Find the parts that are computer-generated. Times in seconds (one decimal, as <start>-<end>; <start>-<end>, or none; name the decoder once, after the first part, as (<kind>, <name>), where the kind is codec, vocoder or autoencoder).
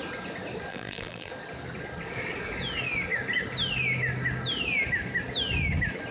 0.7-1.3 (vocoder, BigVGAN v2)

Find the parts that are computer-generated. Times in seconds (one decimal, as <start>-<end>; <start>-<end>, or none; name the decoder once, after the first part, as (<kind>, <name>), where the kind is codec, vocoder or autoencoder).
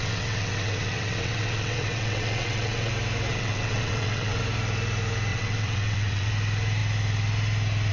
0.0-2.9 (vocoder, WaveNeXt); 3.3-4.4; 5.3-6.3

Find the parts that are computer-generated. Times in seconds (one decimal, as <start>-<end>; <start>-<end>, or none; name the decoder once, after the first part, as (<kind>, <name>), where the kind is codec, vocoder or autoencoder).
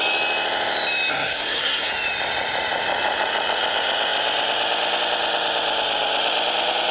1.1-1.9 (codec, SNAC)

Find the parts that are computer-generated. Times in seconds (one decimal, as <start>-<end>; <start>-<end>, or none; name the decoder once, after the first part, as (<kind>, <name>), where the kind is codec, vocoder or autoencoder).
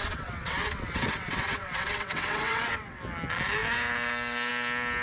0.0-3.0 (vocoder, WaveNeXt)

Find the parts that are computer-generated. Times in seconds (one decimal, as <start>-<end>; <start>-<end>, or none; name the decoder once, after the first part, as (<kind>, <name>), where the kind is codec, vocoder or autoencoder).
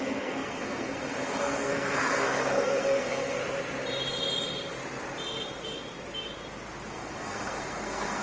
0.0-3.4 (codec, SNAC); 6.9-8.2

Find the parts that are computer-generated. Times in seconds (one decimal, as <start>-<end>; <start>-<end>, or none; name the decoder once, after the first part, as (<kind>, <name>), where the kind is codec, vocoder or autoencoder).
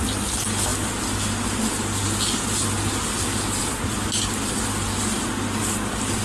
none